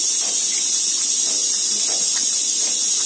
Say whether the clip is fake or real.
real